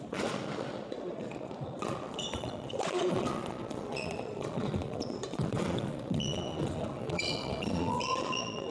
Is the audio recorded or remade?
remade